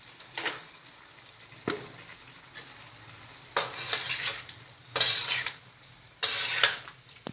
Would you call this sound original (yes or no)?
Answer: yes